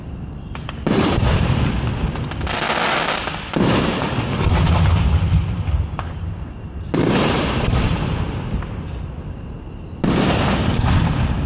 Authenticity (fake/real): real